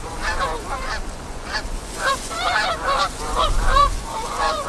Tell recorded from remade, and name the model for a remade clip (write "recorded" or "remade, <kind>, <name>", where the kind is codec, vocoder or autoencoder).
remade, vocoder, Vocos